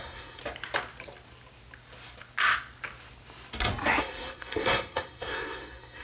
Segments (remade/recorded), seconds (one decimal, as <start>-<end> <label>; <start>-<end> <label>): 0.0-0.4 remade; 0.4-4.0 recorded; 4.0-6.0 remade